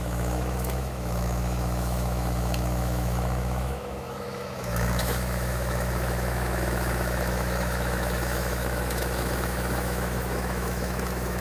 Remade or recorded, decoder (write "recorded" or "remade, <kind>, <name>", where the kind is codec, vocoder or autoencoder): remade, autoencoder, DAC-VAE